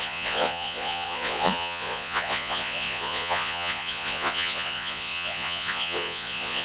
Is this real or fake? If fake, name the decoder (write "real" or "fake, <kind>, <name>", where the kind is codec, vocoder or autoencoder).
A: fake, vocoder, Vocos